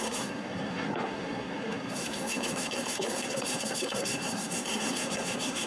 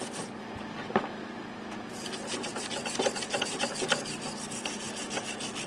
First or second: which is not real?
first